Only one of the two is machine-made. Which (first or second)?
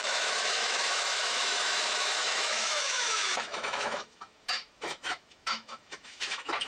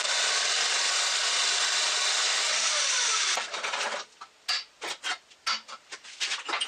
first